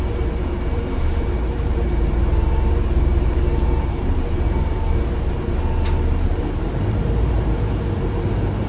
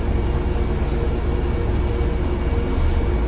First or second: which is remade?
first